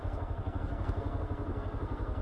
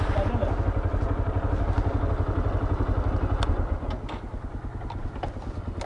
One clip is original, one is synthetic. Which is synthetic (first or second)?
first